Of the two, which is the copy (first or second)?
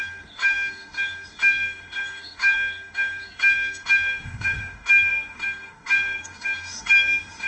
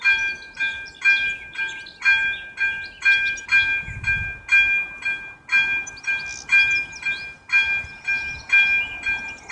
first